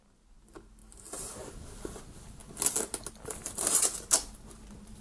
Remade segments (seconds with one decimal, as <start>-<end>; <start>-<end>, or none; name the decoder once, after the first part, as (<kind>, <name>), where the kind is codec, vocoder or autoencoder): none